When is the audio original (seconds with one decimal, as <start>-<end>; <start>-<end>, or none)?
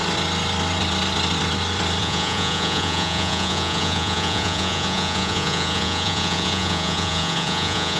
0.0-2.0